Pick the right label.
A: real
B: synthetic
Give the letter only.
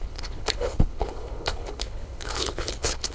B